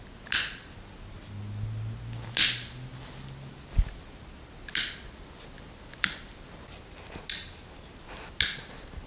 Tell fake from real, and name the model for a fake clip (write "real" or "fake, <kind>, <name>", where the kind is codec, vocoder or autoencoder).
real